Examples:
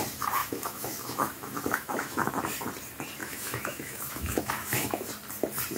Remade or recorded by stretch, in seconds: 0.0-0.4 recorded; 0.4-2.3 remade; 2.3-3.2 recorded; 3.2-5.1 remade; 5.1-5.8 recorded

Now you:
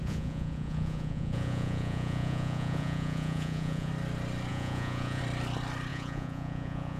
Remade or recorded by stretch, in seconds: 0.0-3.9 remade; 3.9-4.5 recorded; 4.5-5.2 remade; 5.2-5.9 recorded; 5.9-7.0 remade

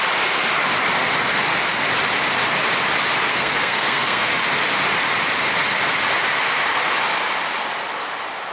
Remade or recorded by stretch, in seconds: 0.0-3.3 recorded; 3.3-4.3 remade; 4.3-8.5 recorded

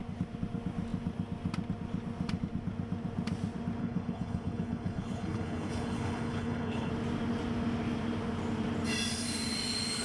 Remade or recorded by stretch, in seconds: 0.0-3.8 recorded; 3.8-6.9 remade; 6.9-10.0 recorded